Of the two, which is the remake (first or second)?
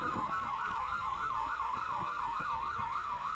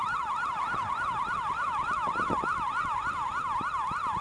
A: first